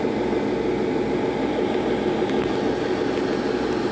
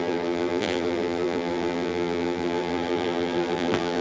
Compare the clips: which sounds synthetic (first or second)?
second